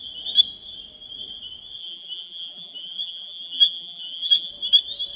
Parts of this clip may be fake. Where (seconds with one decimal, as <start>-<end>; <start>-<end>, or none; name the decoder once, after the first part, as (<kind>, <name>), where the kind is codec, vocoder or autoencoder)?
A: 1.8-4.5 (vocoder, BigVGAN v2)